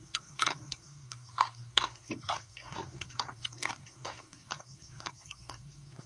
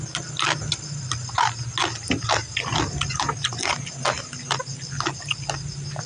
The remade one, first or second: first